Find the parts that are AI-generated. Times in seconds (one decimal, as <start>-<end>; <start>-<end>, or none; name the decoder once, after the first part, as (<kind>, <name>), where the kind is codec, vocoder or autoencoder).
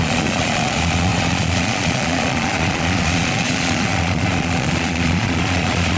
0.0-6.0 (vocoder, Vocos)